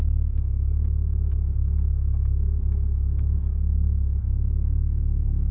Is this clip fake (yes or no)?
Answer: yes